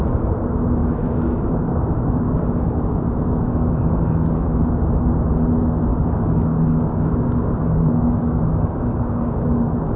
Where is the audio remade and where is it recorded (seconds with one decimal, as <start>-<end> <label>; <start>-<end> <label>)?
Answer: 0.0-0.8 recorded; 0.8-4.7 remade; 4.7-5.9 recorded; 5.9-10.0 remade